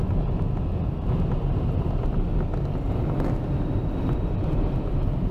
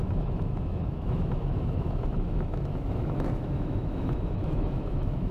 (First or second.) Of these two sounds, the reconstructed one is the second